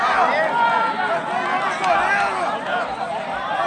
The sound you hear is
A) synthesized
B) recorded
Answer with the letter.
B